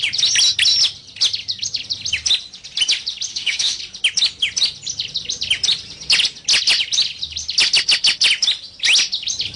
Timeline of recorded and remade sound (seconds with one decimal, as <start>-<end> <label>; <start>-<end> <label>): 0.0-3.3 recorded; 3.3-3.8 remade; 3.8-9.6 recorded